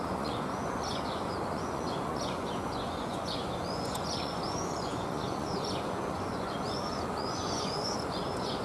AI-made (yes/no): yes